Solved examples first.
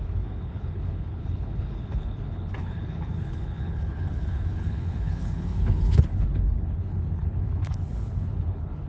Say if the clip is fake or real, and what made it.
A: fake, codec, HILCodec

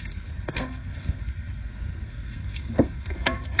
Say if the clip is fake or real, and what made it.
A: fake, codec, SNAC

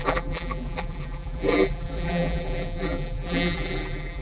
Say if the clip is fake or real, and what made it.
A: fake, vocoder, BigVGAN v2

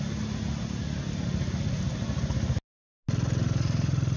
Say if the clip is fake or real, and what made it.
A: real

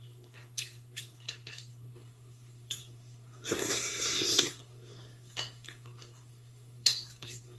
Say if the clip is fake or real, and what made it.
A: fake, codec, SNAC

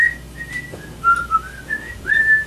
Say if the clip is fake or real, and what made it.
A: real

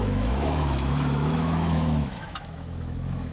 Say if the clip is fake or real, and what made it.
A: fake, autoencoder, DAC-VAE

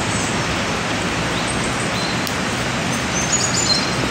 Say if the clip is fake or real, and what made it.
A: real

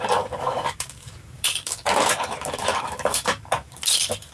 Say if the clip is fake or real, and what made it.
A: fake, codec, DAC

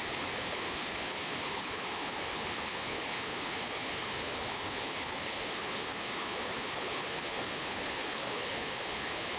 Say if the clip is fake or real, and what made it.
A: fake, codec, HILCodec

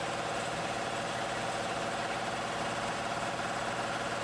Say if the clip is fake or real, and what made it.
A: real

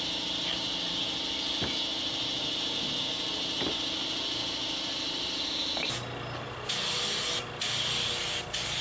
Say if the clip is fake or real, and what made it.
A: real